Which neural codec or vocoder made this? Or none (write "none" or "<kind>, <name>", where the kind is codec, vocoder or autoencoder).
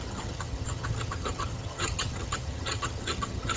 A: vocoder, HiFi-GAN